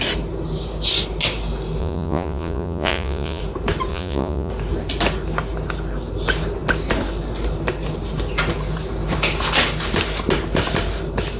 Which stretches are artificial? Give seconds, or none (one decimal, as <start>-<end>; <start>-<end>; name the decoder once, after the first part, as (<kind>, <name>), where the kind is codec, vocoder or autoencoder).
1.8-3.4 (vocoder, Vocos); 3.9-4.5